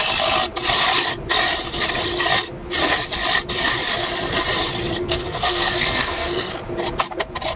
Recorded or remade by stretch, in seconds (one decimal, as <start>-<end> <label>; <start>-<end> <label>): 0.0-5.0 recorded; 5.0-6.5 remade; 6.5-7.6 recorded